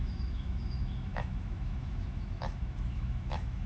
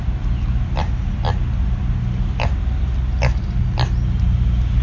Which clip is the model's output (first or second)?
first